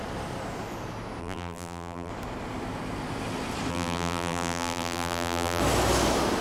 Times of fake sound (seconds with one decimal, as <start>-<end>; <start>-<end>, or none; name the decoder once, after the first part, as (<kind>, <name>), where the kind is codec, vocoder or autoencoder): 1.2-2.1 (vocoder, BigVGAN v2); 3.7-5.6